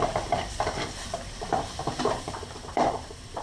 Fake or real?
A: fake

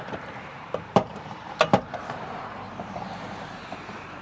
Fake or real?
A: fake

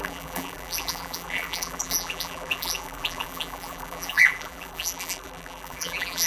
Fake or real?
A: fake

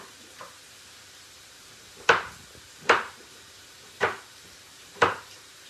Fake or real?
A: fake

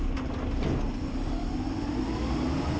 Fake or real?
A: real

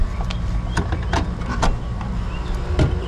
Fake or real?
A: real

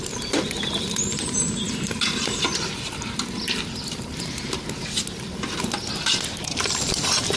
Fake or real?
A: real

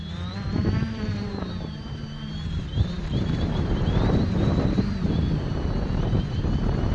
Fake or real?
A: fake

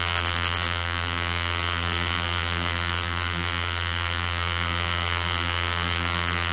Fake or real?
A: fake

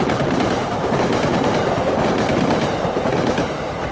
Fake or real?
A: fake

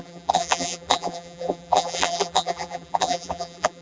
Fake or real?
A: fake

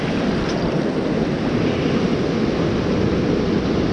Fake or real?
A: real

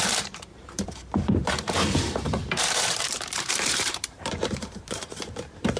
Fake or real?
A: fake